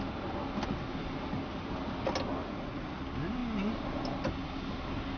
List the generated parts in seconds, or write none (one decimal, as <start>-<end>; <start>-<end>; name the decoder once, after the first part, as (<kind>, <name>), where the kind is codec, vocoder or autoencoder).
2.4-2.9 (vocoder, Vocos)